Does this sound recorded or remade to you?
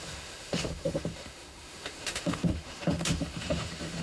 remade